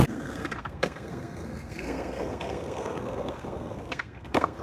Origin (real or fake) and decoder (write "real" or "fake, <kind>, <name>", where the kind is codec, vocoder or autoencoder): fake, codec, SNAC